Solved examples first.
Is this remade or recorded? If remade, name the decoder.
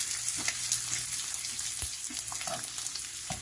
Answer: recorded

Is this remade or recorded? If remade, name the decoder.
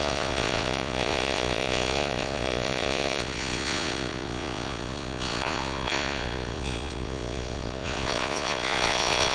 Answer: remade, vocoder, Vocos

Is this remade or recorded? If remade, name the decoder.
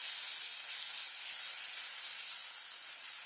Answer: recorded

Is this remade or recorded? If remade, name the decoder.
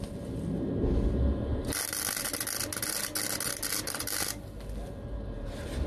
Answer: recorded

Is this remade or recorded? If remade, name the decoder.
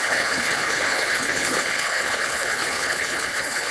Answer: remade, codec, HILCodec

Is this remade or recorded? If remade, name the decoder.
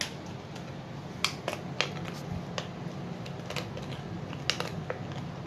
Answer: recorded